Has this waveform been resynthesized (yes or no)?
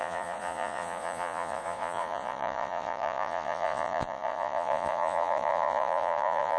yes